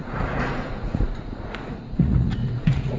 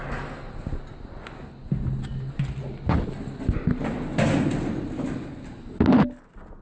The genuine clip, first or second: second